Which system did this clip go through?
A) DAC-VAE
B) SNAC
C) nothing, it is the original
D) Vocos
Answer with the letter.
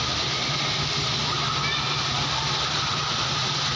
C